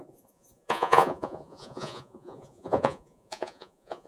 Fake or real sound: fake